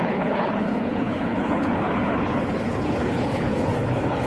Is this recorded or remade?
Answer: remade